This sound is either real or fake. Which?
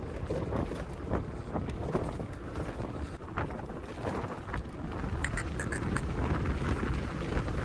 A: real